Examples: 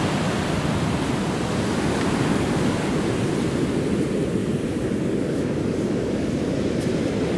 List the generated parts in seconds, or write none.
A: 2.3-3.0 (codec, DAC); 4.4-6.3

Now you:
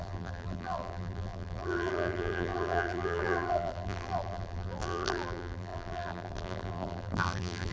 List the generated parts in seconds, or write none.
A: 0.0-7.7 (vocoder, BigVGAN v2)

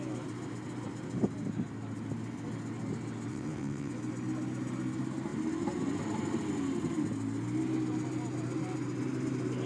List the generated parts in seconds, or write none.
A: 3.3-3.9 (vocoder, WaveNeXt)